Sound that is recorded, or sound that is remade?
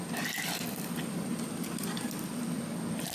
recorded